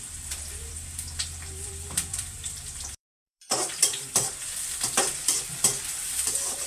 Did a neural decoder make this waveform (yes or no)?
yes